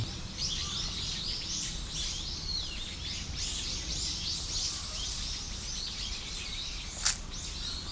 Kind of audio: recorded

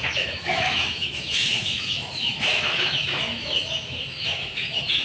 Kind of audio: remade